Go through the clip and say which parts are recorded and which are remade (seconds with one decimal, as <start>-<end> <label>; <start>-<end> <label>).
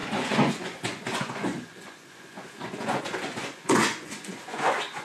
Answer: 0.0-5.0 remade